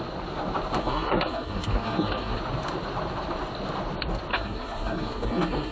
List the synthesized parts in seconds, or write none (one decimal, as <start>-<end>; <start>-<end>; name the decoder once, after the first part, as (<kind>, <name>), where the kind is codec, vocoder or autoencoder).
0.8-2.4 (codec, SNAC); 4.3-5.7